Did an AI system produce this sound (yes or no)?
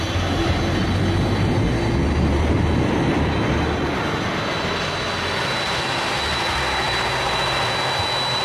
no